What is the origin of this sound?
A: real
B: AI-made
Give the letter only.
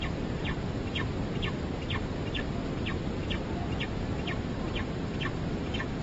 A